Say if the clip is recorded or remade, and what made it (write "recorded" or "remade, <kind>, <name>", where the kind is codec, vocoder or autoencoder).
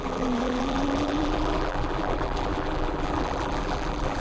remade, vocoder, BigVGAN v2